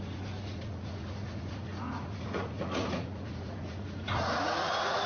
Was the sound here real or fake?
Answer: fake